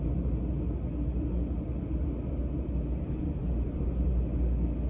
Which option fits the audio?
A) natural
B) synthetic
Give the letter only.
A